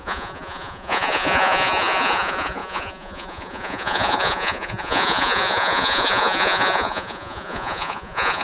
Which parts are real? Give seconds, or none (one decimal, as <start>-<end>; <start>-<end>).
none